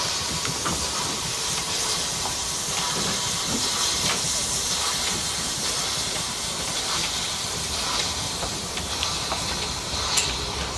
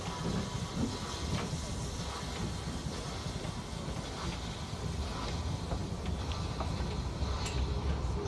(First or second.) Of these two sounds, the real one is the second